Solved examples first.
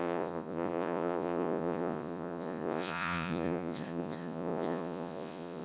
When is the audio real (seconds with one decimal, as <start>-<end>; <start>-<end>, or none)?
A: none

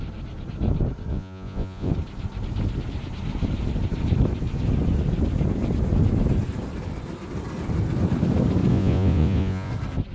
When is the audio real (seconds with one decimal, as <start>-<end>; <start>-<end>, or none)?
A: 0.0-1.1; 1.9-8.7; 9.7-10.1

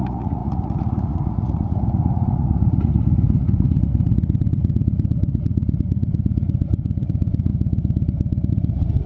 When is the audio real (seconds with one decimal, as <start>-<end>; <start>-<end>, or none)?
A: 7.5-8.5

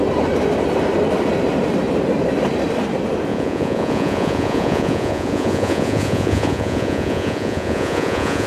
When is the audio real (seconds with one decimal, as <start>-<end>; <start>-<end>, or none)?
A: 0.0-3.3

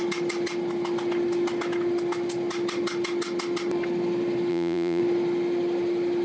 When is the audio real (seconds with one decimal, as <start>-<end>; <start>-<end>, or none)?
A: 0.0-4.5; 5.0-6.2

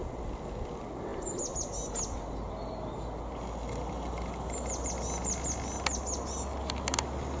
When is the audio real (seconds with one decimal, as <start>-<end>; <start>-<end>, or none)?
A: 0.0-7.4